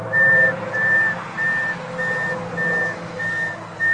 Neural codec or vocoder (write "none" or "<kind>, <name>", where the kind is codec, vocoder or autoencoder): none